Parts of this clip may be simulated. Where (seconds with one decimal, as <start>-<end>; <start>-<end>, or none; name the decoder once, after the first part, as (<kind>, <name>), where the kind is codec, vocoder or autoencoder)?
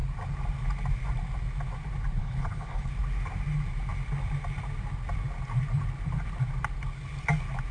2.2-2.9 (codec, HILCodec)